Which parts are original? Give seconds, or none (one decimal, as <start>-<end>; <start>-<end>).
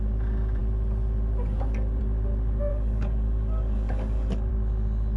0.0-2.7; 4.5-5.2